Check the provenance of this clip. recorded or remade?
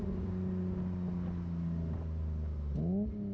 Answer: recorded